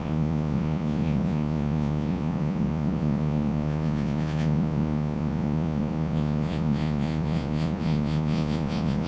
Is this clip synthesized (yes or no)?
yes